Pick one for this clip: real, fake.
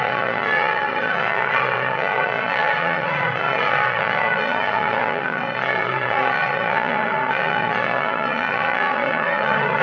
fake